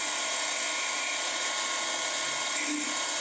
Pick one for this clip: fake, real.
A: real